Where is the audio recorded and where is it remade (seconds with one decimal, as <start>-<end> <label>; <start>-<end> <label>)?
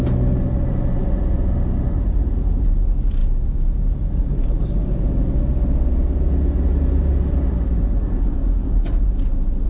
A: 0.0-9.7 recorded